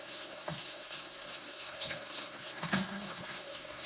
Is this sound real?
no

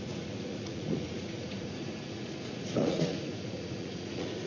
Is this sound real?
no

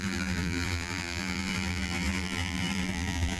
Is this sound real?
no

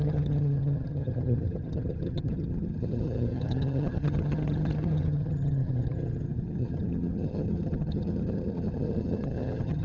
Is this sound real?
no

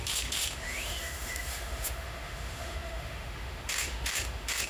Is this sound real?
no